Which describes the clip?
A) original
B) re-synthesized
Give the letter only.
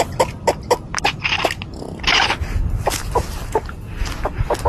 A